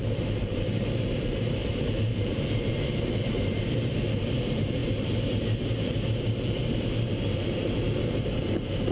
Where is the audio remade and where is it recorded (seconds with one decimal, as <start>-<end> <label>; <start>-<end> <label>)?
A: 0.0-8.9 remade